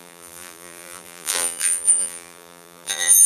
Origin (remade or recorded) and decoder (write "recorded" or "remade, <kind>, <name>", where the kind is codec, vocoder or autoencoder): remade, vocoder, BigVGAN v2